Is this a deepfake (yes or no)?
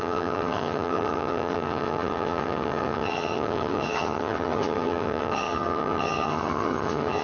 yes